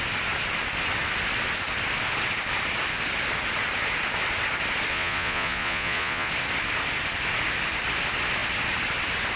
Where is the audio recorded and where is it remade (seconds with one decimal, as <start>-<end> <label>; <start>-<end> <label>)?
0.0-4.9 recorded; 4.9-6.3 remade; 6.3-9.4 recorded